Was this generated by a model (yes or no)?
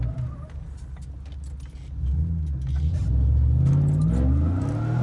no